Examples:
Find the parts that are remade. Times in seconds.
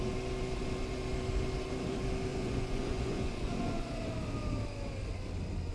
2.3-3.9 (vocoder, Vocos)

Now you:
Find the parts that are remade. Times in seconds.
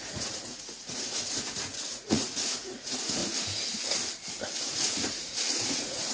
0.0-3.2 (vocoder, Vocos); 4.6-6.1